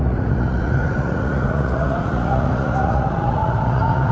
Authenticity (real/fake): fake